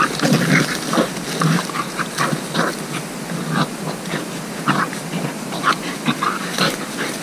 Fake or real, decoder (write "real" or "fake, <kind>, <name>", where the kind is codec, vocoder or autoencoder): real